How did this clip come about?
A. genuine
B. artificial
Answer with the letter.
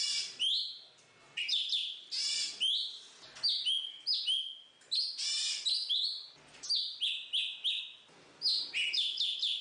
A